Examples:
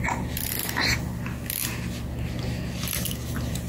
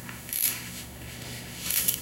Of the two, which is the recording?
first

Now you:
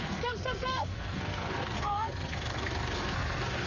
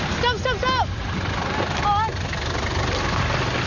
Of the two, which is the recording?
second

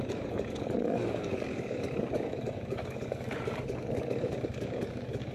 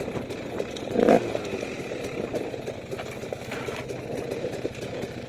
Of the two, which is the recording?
second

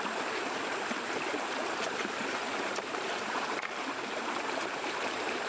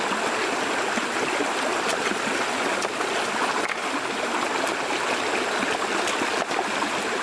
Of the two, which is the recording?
second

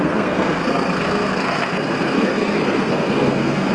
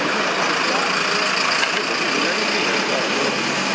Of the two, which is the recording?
second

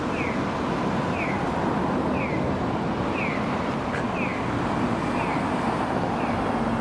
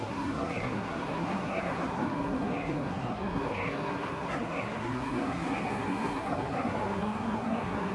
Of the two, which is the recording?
first